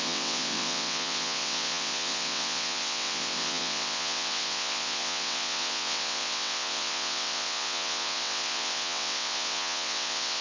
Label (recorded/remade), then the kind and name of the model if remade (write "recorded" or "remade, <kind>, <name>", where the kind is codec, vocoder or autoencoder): remade, vocoder, WaveNeXt